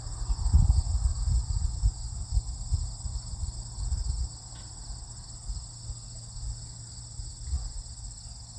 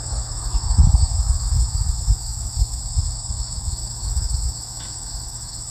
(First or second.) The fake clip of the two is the second